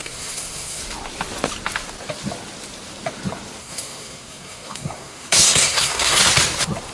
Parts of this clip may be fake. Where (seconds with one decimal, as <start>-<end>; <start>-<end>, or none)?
0.0-0.8; 3.6-6.2